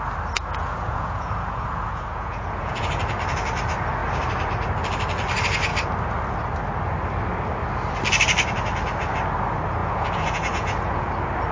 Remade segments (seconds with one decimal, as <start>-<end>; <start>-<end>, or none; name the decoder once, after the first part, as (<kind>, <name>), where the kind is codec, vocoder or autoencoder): 0.4-2.9 (vocoder, Vocos); 9.8-11.1

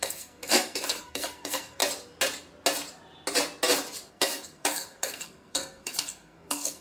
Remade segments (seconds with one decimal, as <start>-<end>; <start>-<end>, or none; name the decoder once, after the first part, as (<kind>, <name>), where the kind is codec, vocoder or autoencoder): 0.0-1.8 (codec, SNAC); 4.1-6.8

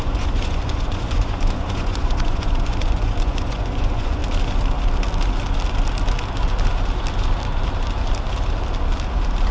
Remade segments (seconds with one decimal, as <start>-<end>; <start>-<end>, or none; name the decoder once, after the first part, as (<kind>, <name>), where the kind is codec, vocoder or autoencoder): 0.0-4.2 (vocoder, Vocos)

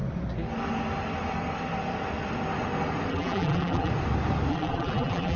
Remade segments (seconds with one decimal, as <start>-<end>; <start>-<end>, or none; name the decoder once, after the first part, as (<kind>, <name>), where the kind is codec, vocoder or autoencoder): 3.1-3.9 (vocoder, BigVGAN v2); 4.5-5.4

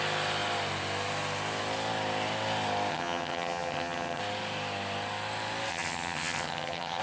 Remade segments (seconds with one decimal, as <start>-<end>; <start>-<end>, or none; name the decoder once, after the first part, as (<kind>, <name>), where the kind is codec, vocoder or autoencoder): 2.9-4.2 (vocoder, HiFi-GAN); 5.7-7.0

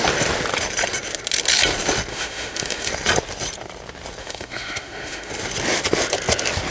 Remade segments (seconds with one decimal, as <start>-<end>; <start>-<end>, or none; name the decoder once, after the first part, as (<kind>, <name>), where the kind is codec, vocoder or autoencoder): 2.1-2.9 (autoencoder, DAC-VAE); 4.2-5.3

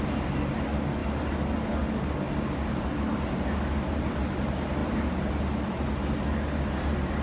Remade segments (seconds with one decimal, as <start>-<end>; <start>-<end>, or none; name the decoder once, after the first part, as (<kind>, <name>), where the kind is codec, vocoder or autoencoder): none

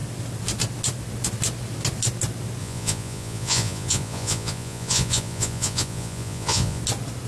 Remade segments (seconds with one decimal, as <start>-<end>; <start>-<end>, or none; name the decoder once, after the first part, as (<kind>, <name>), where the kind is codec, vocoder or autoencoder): 2.6-6.8 (vocoder, Vocos)